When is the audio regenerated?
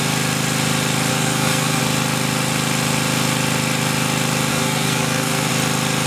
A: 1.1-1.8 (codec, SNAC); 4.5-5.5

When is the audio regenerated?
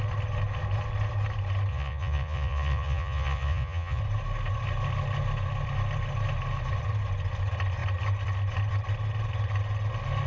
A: 1.7-4.0 (vocoder, Vocos)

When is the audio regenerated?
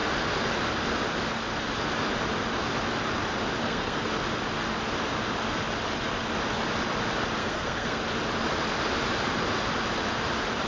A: 3.6-4.1 (codec, SNAC); 7.4-8.0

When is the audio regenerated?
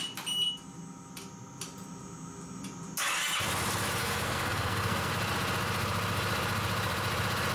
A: 4.0-5.1 (codec, SNAC)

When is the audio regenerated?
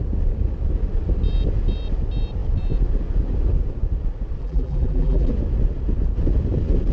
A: 4.4-5.3 (vocoder, BigVGAN v2)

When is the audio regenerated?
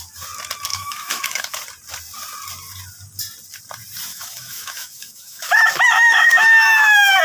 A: 0.7-1.6 (autoencoder, DAC-VAE); 4.1-7.2